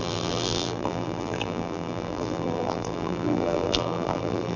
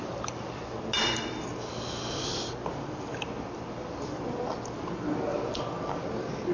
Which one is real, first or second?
second